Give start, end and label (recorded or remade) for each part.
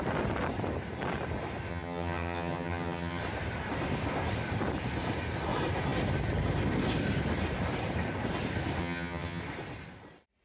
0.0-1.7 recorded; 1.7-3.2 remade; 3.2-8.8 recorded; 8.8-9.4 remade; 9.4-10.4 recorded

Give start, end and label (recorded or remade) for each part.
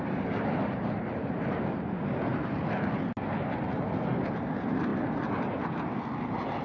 0.0-6.6 recorded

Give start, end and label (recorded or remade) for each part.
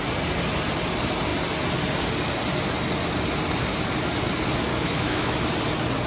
0.0-4.7 recorded; 4.7-5.5 remade; 5.5-6.1 recorded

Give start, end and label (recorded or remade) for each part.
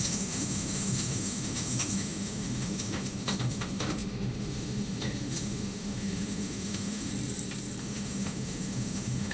0.0-7.1 remade; 7.1-7.8 recorded; 7.8-9.3 remade